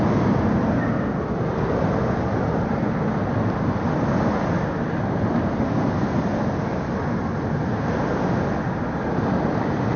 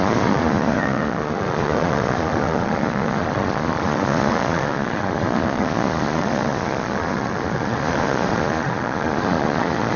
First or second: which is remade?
second